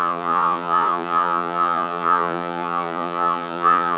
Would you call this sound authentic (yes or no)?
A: no